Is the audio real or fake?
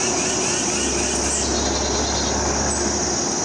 real